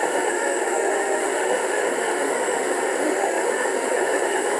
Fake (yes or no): yes